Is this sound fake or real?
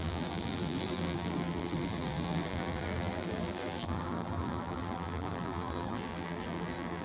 fake